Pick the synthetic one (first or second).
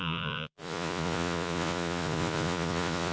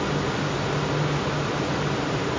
first